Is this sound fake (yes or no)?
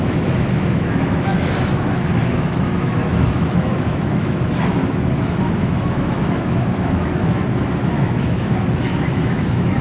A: yes